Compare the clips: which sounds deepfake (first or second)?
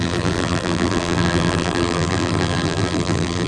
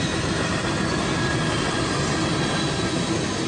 first